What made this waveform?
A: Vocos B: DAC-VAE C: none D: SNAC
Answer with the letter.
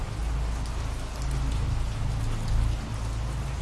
C